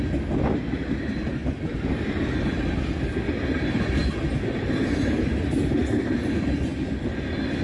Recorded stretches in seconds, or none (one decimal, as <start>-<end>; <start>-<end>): 0.0-7.6